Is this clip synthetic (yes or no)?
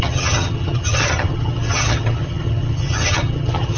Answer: yes